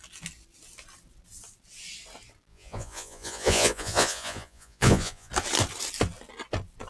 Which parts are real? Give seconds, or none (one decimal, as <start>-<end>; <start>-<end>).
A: 0.0-2.5; 5.3-6.9